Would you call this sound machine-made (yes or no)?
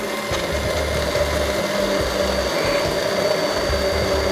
no